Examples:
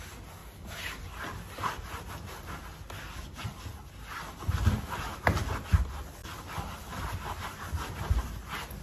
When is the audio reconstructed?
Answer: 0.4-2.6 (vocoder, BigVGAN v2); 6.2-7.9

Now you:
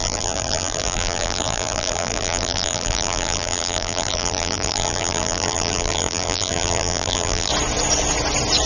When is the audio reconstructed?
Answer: 0.0-7.5 (vocoder, BigVGAN v2)

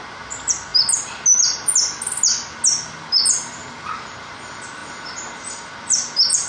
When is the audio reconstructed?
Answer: 3.6-4.1 (vocoder, BigVGAN v2)

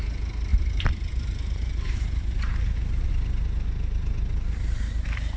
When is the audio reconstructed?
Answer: 0.5-3.1 (vocoder, BigVGAN v2)

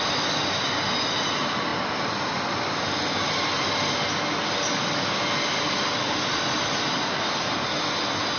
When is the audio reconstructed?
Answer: 1.7-2.2 (vocoder, BigVGAN v2)

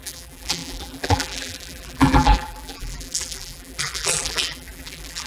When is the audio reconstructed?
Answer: 0.0-5.3 (vocoder, BigVGAN v2)

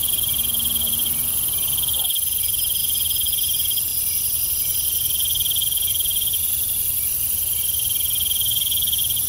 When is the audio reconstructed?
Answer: none